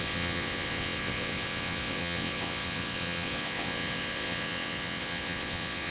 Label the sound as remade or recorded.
remade